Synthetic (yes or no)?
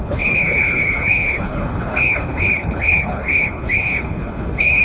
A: yes